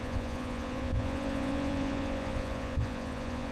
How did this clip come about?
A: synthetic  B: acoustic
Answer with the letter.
A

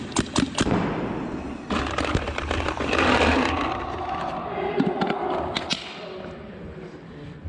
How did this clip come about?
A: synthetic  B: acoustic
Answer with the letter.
B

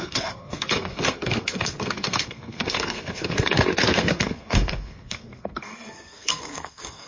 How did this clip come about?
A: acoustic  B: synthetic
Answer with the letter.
B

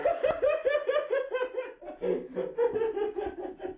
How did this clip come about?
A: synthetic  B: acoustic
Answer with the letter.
B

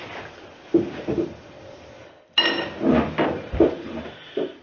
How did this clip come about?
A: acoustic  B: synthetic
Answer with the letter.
A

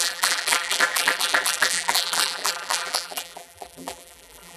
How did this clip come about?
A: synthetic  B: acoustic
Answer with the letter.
A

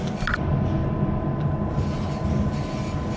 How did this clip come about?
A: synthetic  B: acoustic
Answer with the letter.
B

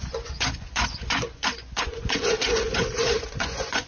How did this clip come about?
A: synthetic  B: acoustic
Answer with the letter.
A